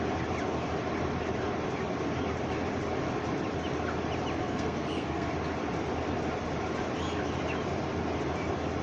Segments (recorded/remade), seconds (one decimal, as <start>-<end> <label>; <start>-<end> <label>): 0.0-4.4 recorded; 4.4-5.3 remade; 5.3-8.8 recorded